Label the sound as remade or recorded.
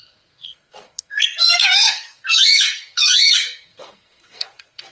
remade